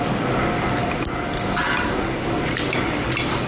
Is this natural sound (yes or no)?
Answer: yes